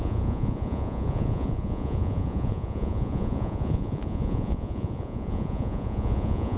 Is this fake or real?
fake